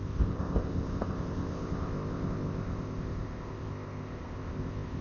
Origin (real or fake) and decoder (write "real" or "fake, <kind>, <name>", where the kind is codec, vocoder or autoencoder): fake, codec, ZipCodec